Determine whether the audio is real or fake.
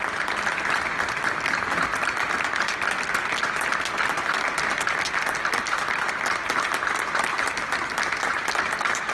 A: real